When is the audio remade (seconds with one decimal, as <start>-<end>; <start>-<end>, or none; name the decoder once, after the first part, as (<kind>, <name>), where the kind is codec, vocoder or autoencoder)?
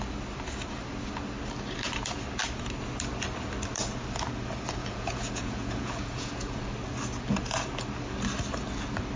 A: 4.8-6.6 (vocoder, Vocos)